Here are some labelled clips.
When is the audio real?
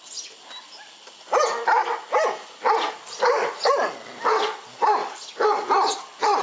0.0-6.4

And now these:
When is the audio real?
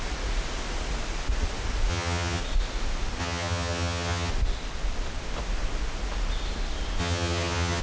0.0-1.9; 2.4-3.2; 4.3-7.0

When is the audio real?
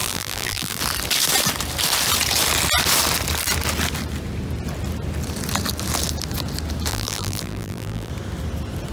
0.8-6.9; 8.1-8.9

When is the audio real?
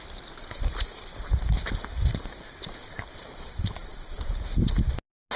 0.0-3.3; 4.3-5.4